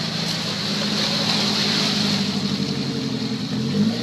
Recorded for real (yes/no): yes